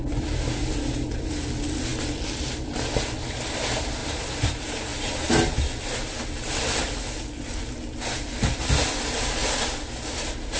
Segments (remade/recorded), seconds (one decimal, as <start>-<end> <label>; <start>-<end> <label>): 0.0-4.0 recorded; 4.0-4.5 remade; 4.5-10.6 recorded